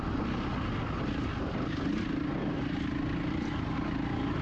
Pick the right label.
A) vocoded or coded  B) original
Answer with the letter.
B